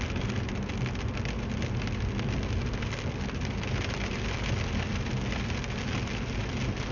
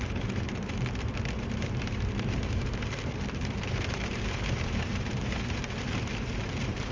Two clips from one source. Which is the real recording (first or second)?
first